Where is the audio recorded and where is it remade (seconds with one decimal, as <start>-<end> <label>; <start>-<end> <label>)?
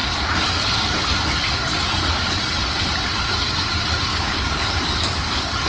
0.0-4.1 recorded; 4.1-5.7 remade